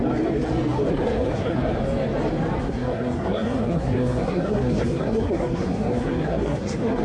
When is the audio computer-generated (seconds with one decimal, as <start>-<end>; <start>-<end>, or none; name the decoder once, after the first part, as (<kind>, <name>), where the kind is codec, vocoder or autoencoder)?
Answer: 0.9-1.7 (codec, SNAC); 2.6-7.0